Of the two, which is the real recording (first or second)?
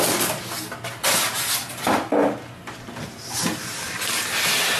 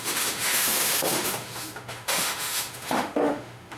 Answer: first